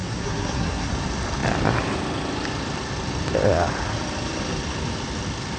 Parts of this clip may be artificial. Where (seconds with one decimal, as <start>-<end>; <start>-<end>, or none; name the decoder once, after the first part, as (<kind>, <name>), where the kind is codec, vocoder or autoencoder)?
0.0-0.9 (codec, SNAC)